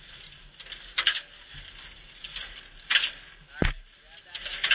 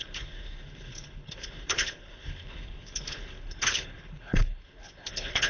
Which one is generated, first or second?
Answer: second